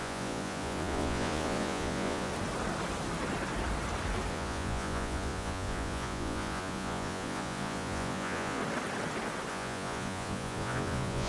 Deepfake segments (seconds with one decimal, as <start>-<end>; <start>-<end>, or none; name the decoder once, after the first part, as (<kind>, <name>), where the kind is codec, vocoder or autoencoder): 0.0-2.3 (vocoder, Vocos); 4.3-8.6; 9.5-11.3